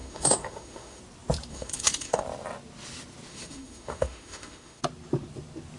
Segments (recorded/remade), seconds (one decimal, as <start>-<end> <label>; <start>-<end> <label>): 0.0-1.0 remade; 1.0-1.5 recorded; 1.5-2.2 remade; 2.2-3.3 recorded; 3.3-4.8 remade; 4.8-5.8 recorded